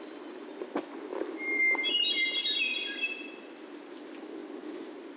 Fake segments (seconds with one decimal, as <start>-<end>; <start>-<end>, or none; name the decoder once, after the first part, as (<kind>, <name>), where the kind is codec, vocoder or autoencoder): none